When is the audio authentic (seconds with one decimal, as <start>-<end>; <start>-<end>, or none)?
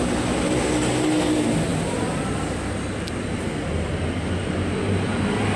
0.0-5.6